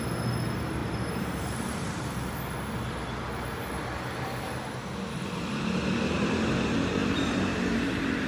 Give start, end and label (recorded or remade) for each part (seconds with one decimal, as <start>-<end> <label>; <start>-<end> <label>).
0.0-0.8 recorded; 0.8-2.5 remade; 2.5-3.9 recorded; 3.9-4.6 remade; 4.6-7.0 recorded; 7.0-8.3 remade

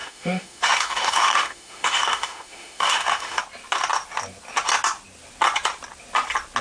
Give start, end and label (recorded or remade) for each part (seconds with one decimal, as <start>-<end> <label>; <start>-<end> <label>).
0.0-3.4 remade; 3.4-6.6 recorded

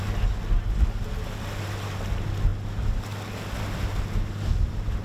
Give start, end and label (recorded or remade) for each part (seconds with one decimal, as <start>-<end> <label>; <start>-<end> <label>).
0.0-5.0 recorded

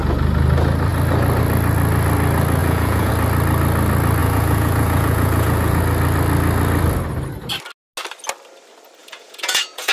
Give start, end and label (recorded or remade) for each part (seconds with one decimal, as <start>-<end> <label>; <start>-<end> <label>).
0.0-2.6 recorded; 2.6-3.1 remade; 3.1-4.2 recorded; 4.2-5.8 remade; 5.8-9.0 recorded; 9.0-9.9 remade

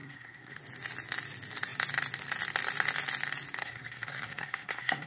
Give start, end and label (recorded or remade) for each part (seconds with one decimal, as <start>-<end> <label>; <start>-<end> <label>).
0.0-0.6 remade; 0.6-3.6 recorded; 3.6-5.1 remade

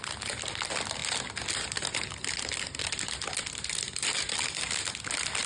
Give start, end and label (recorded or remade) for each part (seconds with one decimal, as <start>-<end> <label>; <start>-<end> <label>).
0.0-5.5 recorded

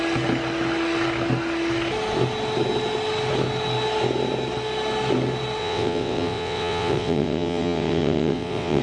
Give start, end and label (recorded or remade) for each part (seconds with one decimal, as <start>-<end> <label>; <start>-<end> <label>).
0.0-5.6 recorded; 5.6-8.8 remade